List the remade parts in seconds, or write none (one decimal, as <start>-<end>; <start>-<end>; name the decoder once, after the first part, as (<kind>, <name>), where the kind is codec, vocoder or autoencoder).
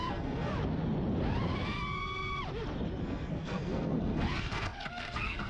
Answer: 0.0-0.5 (codec, SNAC); 3.0-5.5